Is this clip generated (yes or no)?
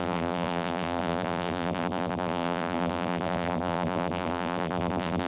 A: yes